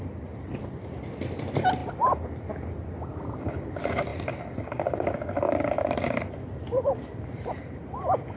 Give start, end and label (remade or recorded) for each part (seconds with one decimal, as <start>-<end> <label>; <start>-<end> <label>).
0.0-8.4 remade